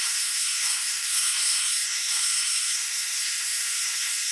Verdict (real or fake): fake